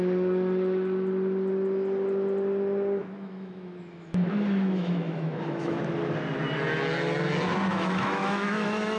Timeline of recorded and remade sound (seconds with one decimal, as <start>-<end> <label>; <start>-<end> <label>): 0.0-3.0 recorded; 3.0-5.8 remade; 5.8-7.7 recorded; 7.7-9.0 remade